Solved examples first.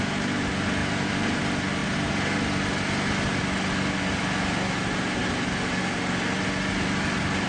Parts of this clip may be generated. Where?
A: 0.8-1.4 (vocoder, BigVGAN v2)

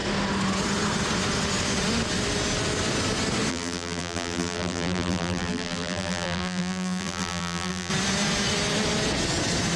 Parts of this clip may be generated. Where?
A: 3.5-7.9 (vocoder, BigVGAN v2)

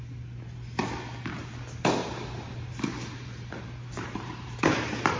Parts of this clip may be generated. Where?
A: 2.0-5.2 (vocoder, BigVGAN v2)

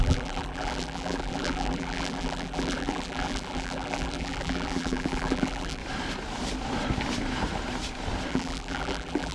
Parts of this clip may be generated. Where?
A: 0.0-5.8 (vocoder, BigVGAN v2); 8.3-9.3

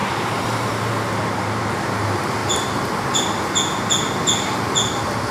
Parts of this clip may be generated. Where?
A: 0.0-2.4 (vocoder, BigVGAN v2)

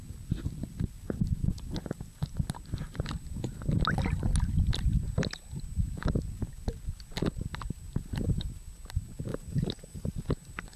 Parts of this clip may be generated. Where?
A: 9.3-10.3 (vocoder, BigVGAN v2)